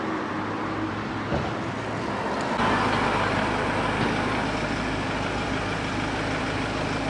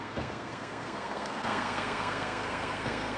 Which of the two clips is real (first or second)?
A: first